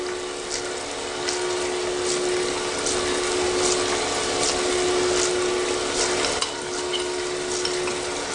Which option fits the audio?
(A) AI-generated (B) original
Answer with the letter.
B